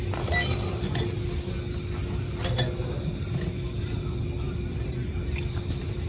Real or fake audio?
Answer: real